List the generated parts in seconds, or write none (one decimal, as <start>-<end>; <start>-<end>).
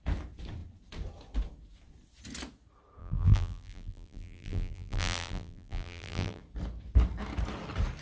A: 3.0-6.4